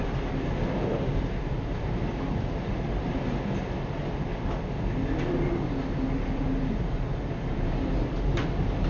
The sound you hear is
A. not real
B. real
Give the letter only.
B